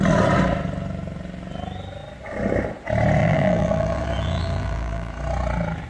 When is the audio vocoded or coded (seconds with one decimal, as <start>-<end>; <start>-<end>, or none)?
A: 3.2-5.1